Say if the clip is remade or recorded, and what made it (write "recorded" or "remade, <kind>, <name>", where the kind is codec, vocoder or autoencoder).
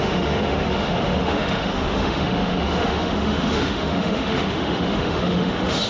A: remade, autoencoder, DAC-VAE